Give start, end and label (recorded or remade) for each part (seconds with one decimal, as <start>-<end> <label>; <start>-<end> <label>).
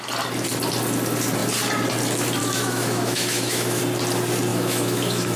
0.0-2.4 recorded; 2.4-3.8 remade; 3.8-4.5 recorded; 4.5-5.4 remade